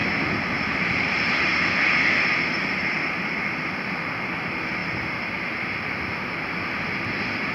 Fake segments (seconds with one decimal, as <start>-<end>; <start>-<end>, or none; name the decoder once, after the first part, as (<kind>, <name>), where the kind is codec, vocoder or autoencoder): none